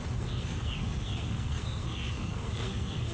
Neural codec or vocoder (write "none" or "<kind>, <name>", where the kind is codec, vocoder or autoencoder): codec, SNAC